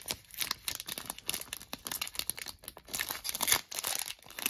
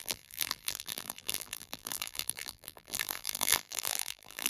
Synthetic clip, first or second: second